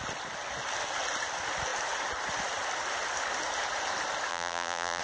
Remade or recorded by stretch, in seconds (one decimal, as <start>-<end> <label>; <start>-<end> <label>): 0.0-4.3 recorded; 4.3-5.0 remade